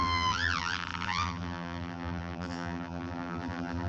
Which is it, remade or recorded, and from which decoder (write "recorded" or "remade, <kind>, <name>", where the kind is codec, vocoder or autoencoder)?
remade, vocoder, BigVGAN v2